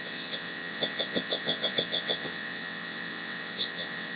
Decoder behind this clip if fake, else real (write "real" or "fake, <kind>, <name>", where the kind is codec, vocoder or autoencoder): fake, vocoder, WaveNeXt